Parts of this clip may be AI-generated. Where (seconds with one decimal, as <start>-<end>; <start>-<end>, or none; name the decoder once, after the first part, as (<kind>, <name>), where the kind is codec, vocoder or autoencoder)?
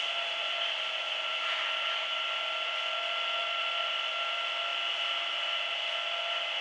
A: 1.3-2.1 (vocoder, BigVGAN v2); 3.4-4.1